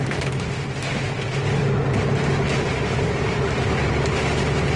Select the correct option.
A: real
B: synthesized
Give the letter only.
A